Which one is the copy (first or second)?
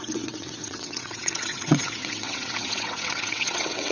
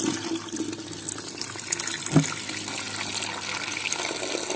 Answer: first